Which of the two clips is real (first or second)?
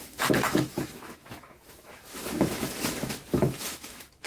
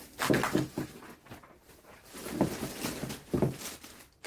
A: second